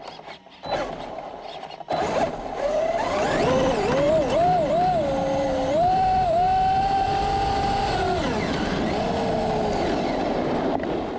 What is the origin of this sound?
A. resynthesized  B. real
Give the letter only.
B